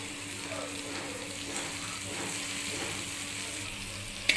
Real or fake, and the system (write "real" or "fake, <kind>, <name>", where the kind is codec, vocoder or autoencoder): real